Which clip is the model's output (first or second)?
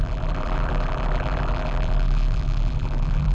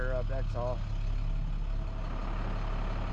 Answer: first